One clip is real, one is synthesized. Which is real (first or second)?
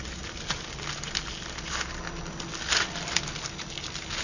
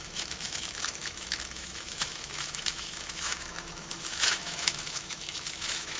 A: first